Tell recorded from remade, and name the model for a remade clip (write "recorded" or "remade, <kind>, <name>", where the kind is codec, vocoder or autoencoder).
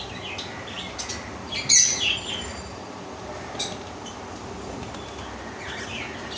recorded